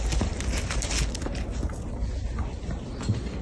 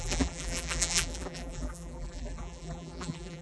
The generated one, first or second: second